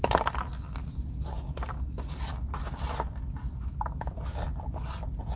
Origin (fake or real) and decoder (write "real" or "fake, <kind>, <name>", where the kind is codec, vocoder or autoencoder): real